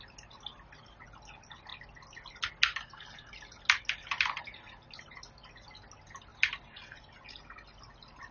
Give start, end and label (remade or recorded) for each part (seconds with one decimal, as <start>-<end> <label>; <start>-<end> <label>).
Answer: 0.0-8.3 recorded